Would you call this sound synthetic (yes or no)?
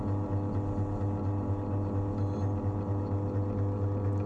no